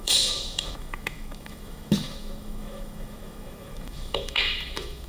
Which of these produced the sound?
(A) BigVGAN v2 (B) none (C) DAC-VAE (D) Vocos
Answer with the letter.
C